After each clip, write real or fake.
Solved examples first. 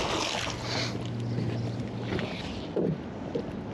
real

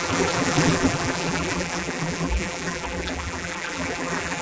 fake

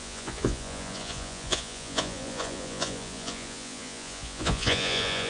fake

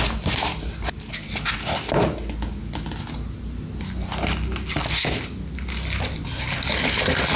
real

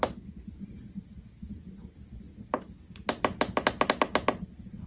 real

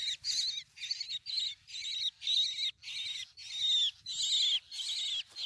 real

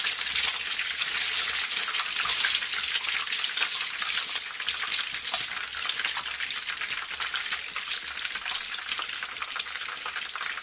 real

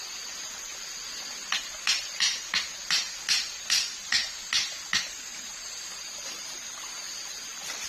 real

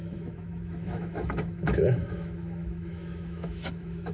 fake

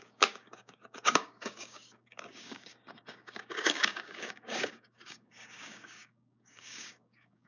fake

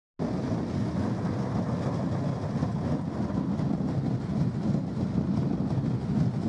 real